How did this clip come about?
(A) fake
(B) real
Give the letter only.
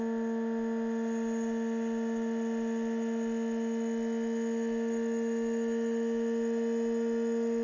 B